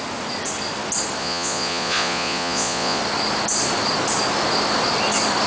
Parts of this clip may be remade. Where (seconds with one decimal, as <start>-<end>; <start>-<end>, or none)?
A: 1.2-3.0